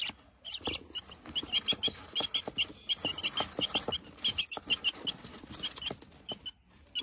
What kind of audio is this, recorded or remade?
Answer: recorded